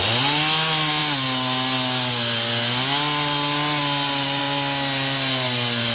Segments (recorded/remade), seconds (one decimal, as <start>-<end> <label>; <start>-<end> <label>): 0.0-5.9 recorded